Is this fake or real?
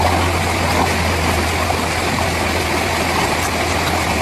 real